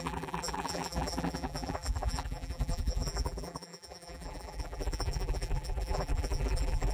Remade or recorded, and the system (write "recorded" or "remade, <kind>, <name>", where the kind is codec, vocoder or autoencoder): remade, vocoder, BigVGAN v2